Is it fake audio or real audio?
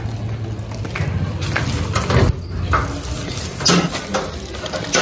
real